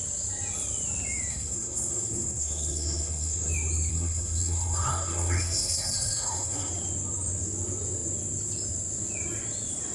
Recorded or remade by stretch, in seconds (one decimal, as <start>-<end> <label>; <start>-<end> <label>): 0.0-1.3 recorded; 1.3-3.5 remade; 3.5-3.9 recorded; 3.9-6.7 remade; 6.7-9.9 recorded